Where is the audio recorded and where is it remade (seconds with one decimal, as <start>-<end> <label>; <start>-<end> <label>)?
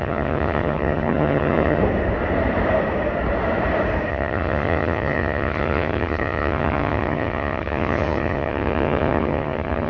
0.0-1.8 remade; 1.8-4.1 recorded; 4.1-9.9 remade